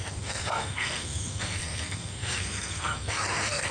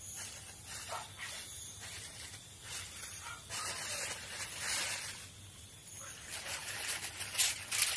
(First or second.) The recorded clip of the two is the second